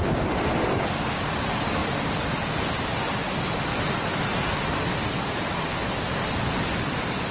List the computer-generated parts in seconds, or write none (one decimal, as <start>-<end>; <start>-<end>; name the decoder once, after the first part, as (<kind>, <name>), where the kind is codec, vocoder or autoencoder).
none